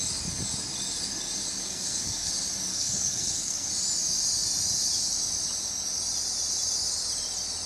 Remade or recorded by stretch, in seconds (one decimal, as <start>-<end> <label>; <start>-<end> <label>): 0.0-1.6 recorded; 1.6-2.3 remade; 2.3-2.7 recorded; 2.7-3.7 remade; 3.7-7.7 recorded